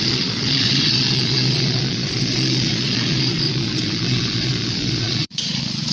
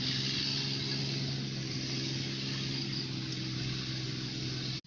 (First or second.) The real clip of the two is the second